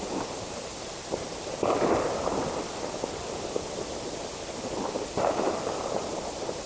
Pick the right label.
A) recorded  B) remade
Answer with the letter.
B